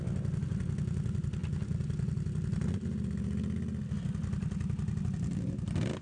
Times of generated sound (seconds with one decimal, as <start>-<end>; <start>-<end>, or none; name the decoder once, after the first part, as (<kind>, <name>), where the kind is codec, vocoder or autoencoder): none